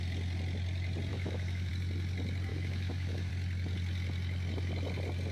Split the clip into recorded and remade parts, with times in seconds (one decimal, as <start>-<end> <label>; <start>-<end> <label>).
0.0-1.1 recorded; 1.1-1.7 remade; 1.7-2.5 recorded; 2.5-3.3 remade; 3.3-5.3 recorded